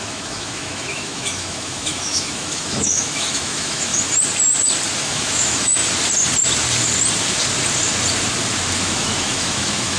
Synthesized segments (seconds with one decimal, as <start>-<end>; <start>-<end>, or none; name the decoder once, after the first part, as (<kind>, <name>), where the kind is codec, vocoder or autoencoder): 0.0-3.9 (autoencoder, DAC-VAE); 5.0-5.8; 8.8-10.0